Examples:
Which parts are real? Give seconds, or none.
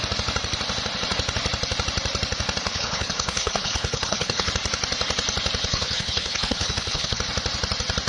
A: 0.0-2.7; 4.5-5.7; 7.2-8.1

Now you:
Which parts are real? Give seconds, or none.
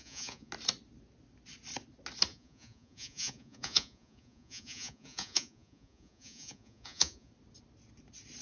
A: 0.5-2.3; 7.3-8.4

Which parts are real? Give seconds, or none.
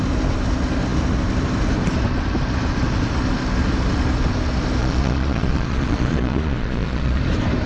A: 0.0-4.8; 7.2-7.7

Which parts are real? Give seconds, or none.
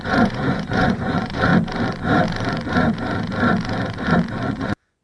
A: 1.5-4.5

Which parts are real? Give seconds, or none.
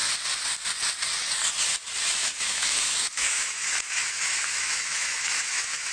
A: 0.0-2.2